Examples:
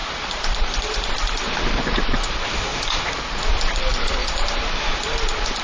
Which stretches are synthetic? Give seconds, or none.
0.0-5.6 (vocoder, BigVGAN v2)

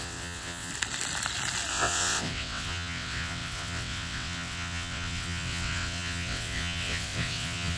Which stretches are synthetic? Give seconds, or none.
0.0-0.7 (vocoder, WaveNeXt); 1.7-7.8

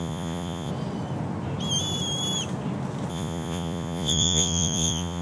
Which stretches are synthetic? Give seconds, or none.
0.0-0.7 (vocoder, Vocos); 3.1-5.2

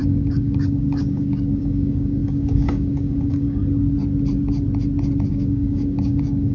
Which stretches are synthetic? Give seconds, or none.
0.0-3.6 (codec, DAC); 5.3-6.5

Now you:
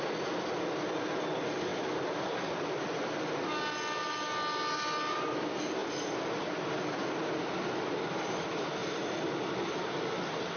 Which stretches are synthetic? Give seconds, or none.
1.7-3.4 (vocoder, BigVGAN v2)